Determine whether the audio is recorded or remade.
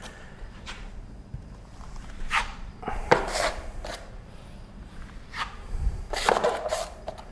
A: remade